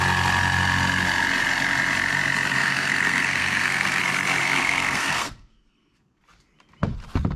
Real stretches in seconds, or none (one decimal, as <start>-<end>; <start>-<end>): 0.0-2.6; 4.0-4.4; 6.2-7.4